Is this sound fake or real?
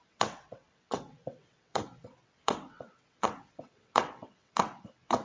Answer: fake